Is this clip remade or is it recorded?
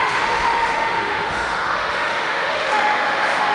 remade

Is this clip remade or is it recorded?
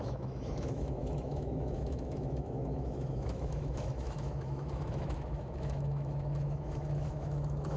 remade